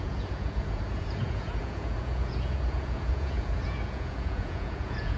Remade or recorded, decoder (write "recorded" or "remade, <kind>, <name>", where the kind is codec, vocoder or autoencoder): remade, vocoder, Vocos